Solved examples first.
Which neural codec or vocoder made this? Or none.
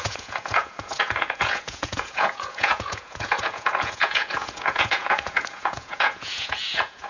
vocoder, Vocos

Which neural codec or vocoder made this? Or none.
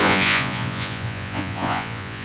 vocoder, Vocos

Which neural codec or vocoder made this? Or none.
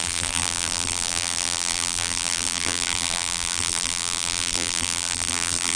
vocoder, BigVGAN v2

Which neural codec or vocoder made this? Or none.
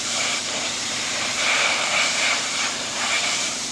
vocoder, BigVGAN v2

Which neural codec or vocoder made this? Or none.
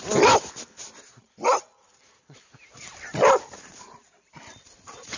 none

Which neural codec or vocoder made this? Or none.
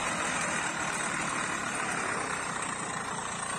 none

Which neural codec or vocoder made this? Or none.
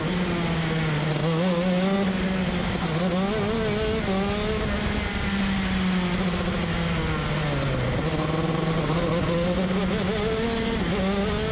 none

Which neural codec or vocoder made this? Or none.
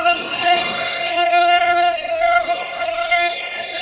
codec, SNAC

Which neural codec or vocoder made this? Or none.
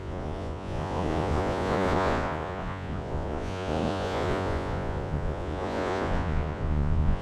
vocoder, Vocos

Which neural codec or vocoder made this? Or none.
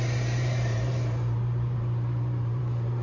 vocoder, BigVGAN v2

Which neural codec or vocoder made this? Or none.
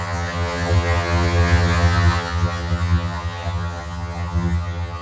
vocoder, HiFi-GAN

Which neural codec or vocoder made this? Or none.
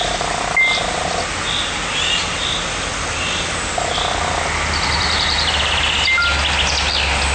none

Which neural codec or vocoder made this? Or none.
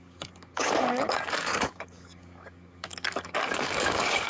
codec, DAC